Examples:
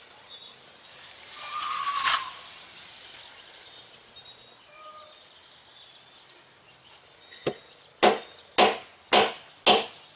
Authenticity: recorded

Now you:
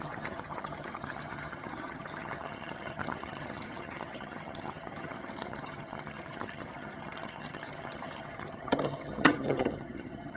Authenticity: remade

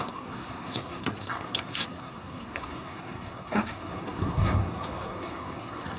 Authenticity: remade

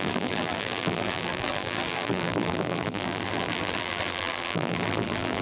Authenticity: remade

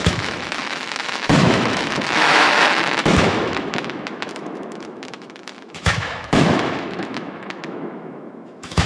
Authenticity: remade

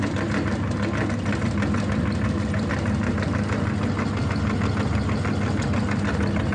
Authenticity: recorded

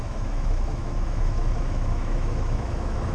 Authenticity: remade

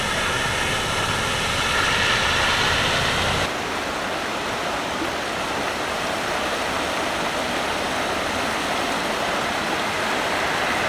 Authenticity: recorded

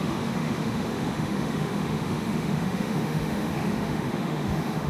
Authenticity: remade